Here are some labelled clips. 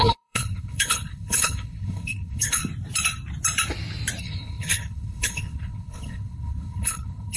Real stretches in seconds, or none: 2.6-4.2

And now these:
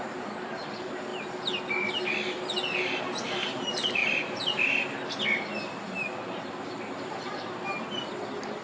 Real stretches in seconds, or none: 0.0-8.6

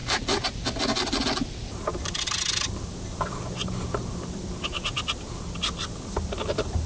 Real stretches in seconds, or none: 0.0-6.9